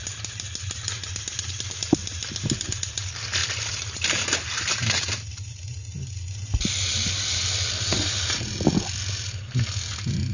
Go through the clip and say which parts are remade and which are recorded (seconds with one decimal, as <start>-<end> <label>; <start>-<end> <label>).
0.0-3.4 recorded; 3.4-6.6 remade; 6.6-10.3 recorded